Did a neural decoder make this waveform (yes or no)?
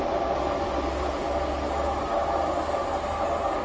no